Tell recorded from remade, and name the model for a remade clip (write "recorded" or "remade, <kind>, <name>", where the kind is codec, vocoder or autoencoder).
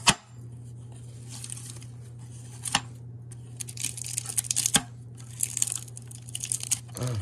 recorded